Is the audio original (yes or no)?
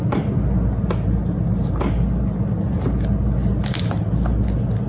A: yes